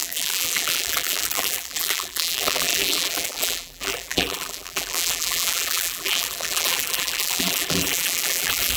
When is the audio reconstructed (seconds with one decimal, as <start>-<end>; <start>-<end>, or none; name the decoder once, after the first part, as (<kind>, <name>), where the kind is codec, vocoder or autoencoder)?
0.0-8.8 (vocoder, BigVGAN v2)